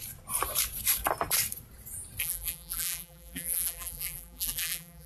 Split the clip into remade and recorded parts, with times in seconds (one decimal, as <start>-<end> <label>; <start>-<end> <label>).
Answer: 0.0-2.2 recorded; 2.2-5.1 remade